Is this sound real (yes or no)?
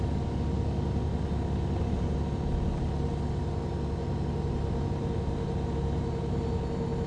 yes